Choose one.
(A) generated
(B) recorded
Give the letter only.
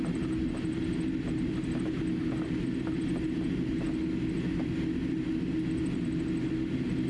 B